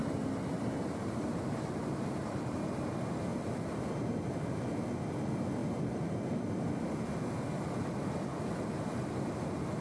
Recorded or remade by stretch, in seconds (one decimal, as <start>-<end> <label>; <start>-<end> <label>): 0.0-2.8 remade; 2.8-3.3 recorded; 3.3-3.8 remade; 3.8-9.8 recorded